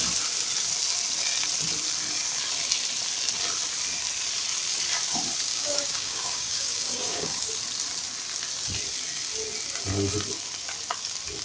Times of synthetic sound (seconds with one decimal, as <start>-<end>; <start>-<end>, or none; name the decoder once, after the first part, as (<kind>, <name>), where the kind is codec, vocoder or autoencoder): 5.5-7.5 (codec, DAC)